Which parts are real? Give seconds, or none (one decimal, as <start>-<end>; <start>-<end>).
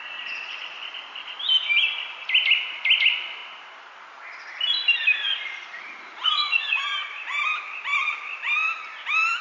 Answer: 0.0-5.1; 6.8-9.4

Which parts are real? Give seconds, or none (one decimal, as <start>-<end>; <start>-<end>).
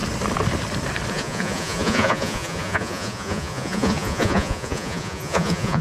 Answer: 0.0-1.1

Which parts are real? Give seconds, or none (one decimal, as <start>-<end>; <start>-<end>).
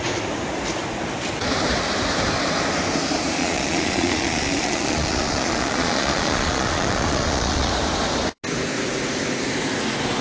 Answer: 0.0-3.4; 7.7-10.2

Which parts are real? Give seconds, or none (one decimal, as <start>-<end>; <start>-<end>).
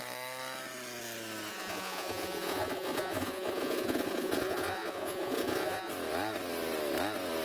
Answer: 0.0-1.5; 5.9-7.4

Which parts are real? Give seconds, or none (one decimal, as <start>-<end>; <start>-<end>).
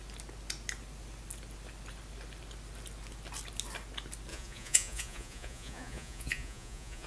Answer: 0.0-4.3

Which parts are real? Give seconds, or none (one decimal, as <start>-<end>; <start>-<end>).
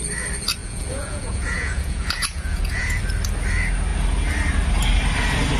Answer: 0.0-0.6; 3.0-5.6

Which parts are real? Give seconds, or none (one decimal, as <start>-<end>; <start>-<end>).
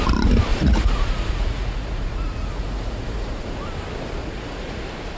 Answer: 0.0-0.5; 3.6-4.2; 4.8-5.2